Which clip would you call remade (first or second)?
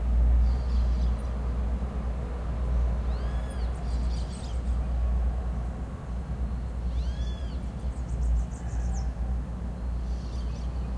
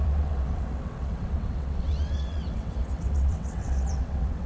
second